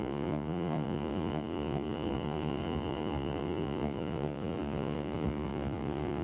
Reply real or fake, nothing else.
fake